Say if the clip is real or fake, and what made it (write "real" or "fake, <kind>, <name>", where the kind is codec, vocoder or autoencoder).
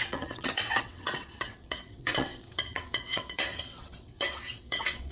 fake, vocoder, WaveNeXt